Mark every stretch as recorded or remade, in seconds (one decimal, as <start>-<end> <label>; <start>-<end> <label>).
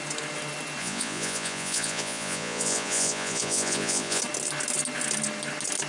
0.0-0.8 recorded; 0.8-4.2 remade; 4.2-5.9 recorded